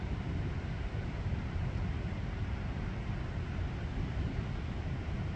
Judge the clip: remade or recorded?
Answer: recorded